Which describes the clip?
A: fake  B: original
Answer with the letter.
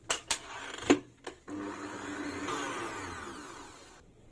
B